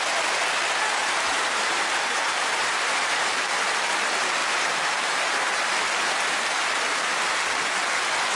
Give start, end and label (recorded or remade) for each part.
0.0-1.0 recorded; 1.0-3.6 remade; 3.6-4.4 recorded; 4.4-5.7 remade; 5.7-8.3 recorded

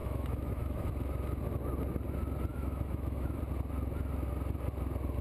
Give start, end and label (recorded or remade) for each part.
0.0-0.9 remade; 0.9-2.5 recorded; 2.5-3.4 remade; 3.4-5.2 recorded

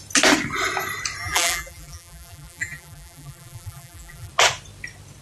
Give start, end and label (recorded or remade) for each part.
0.0-1.2 recorded; 1.2-4.3 remade; 4.3-5.2 recorded